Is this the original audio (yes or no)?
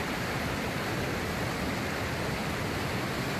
yes